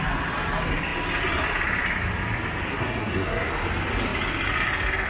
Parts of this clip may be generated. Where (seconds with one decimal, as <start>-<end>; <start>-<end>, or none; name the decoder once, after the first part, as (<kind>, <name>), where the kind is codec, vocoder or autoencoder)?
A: 2.7-3.5 (codec, SNAC)